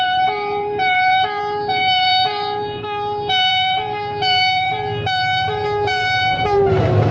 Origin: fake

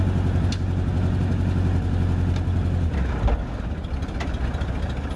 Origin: real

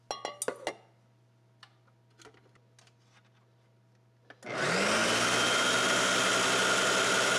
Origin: real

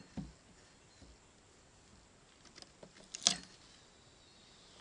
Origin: real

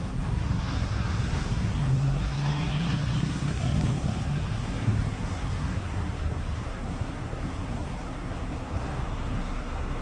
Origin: fake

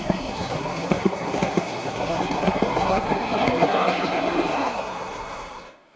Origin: fake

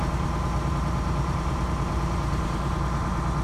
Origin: fake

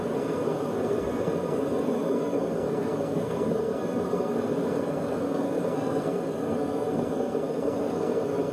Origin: fake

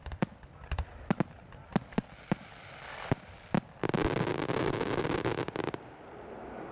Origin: real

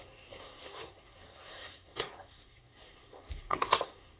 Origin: fake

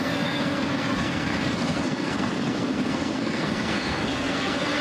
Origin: fake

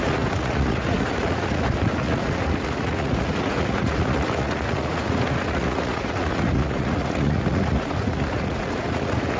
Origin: fake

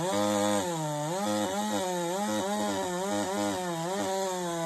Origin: real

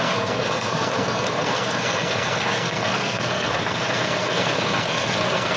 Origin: fake